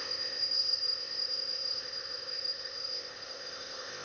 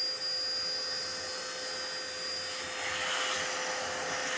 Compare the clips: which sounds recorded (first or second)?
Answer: second